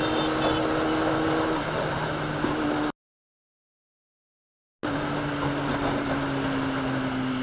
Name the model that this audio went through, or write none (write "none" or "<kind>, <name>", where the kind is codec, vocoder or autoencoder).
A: none